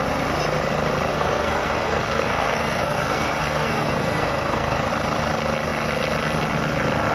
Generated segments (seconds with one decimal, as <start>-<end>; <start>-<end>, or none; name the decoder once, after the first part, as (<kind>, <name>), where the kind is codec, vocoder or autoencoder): 1.1-4.9 (codec, SNAC)